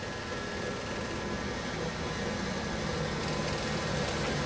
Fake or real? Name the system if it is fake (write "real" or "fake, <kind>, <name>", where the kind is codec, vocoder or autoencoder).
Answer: real